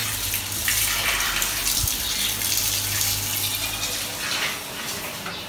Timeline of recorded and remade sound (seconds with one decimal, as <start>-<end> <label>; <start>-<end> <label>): 0.0-1.6 remade; 1.6-4.9 recorded; 4.9-5.5 remade